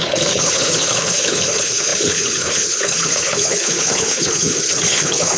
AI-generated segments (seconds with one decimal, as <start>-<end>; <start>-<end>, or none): 0.0-5.4